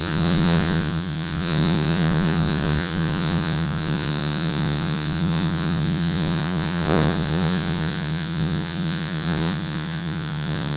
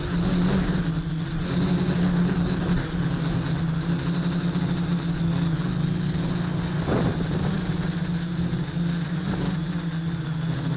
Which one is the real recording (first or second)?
second